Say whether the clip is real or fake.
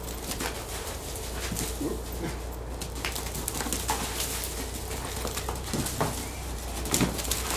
real